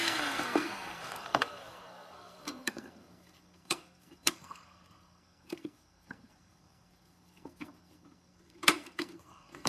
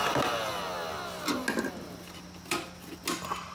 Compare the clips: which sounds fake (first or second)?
first